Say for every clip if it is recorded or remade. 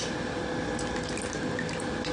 recorded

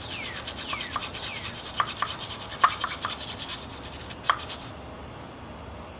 recorded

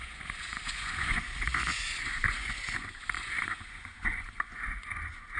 remade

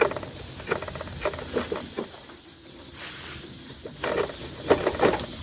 recorded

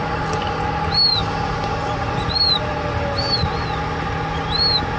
recorded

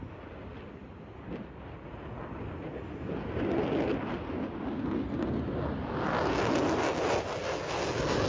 recorded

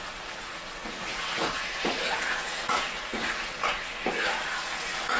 remade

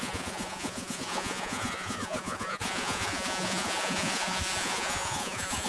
remade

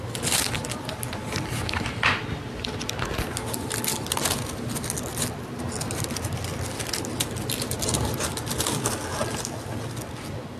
recorded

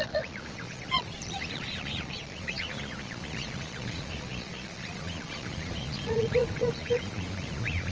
remade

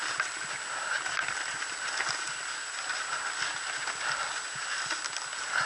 recorded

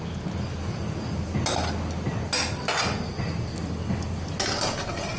recorded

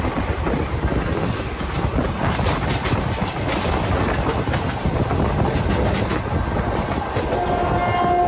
recorded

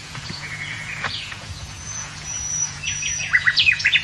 remade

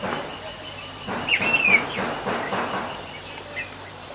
recorded